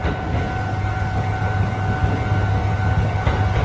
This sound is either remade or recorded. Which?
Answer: recorded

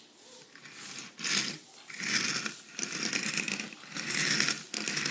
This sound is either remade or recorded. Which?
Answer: recorded